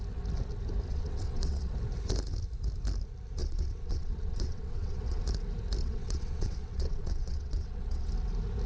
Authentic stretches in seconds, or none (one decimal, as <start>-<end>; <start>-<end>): 0.0-0.9; 1.7-3.4; 5.2-5.8; 8.1-8.7